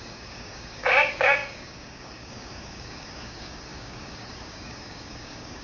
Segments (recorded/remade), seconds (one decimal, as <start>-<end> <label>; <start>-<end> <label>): 0.0-5.6 remade